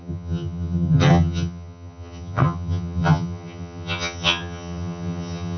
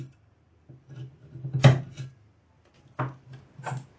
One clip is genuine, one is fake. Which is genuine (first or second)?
second